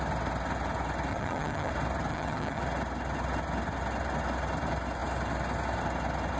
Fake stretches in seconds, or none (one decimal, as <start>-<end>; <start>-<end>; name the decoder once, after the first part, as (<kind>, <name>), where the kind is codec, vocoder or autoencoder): 1.1-1.7 (vocoder, HiFi-GAN); 2.1-2.6